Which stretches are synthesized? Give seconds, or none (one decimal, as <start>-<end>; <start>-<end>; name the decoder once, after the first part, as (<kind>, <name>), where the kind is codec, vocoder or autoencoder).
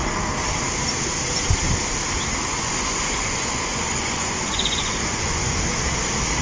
2.5-5.6 (vocoder, Vocos)